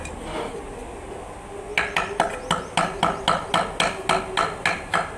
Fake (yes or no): no